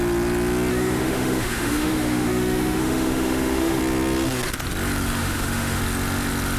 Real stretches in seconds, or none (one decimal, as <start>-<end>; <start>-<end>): 0.0-0.7; 3.8-5.2; 5.8-6.6